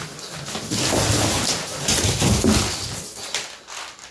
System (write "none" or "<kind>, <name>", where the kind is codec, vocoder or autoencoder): none